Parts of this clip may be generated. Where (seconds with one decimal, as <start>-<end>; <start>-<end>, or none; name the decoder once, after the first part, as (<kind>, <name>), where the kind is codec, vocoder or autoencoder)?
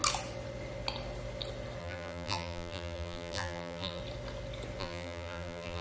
1.8-4.0 (vocoder, BigVGAN v2); 4.8-5.8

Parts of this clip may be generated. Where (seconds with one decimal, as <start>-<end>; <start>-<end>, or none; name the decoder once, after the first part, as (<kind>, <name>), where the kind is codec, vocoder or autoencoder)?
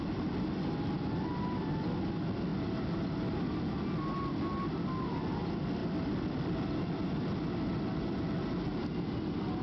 2.5-3.5 (vocoder, BigVGAN v2); 5.8-6.9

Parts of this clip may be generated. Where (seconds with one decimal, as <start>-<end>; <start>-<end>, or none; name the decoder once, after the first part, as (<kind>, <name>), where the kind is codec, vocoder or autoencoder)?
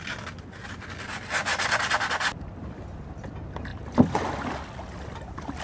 none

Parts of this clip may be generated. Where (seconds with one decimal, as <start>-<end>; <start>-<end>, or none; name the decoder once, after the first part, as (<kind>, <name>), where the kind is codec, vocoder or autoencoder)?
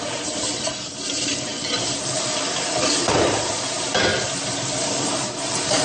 0.0-4.1 (vocoder, BigVGAN v2); 4.8-5.8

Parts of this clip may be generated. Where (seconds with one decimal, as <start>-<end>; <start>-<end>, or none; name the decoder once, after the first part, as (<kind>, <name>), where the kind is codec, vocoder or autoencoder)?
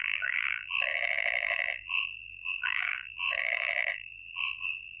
0.0-5.0 (vocoder, BigVGAN v2)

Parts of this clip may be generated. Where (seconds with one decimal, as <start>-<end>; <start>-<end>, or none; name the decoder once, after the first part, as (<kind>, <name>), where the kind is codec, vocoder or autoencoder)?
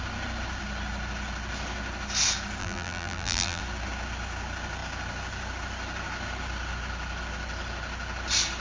2.6-3.6 (vocoder, BigVGAN v2)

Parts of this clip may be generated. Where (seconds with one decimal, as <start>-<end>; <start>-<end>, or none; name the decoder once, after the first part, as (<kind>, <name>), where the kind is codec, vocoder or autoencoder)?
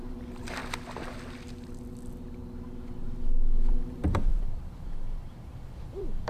0.0-0.6 (vocoder, BigVGAN v2); 3.7-6.3